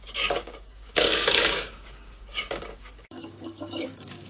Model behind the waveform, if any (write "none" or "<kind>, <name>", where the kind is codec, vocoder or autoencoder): codec, DAC